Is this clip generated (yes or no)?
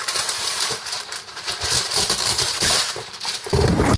yes